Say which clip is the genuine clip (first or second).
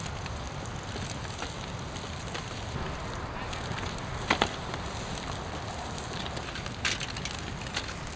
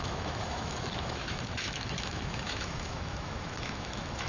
first